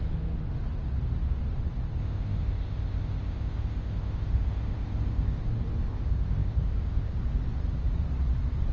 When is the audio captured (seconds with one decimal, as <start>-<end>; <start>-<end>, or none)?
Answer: 0.0-2.0; 5.4-5.9; 7.1-8.7